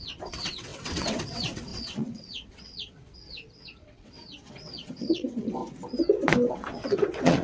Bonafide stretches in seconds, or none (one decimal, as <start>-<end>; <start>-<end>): 5.6-6.5

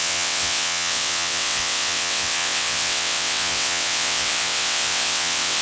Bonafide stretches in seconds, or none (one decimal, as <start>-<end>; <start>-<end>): none

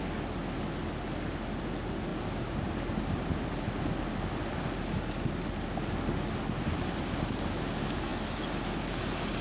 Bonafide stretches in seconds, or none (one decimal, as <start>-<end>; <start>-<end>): 0.0-9.4

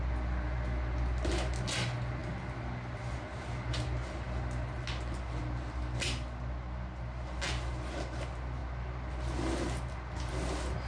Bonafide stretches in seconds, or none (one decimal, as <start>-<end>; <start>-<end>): 0.0-10.9

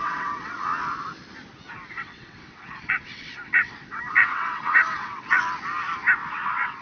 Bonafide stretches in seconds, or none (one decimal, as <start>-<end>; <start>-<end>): 0.7-1.9; 5.4-6.3

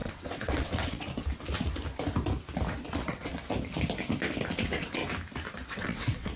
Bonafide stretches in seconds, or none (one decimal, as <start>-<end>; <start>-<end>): 1.1-2.9; 3.4-4.5; 5.0-5.7

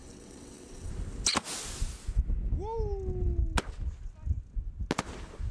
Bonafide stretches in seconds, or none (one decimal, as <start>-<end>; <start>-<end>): 0.9-5.5